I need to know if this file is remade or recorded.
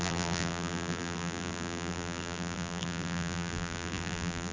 remade